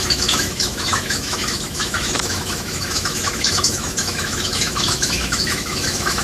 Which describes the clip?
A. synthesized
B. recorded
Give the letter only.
A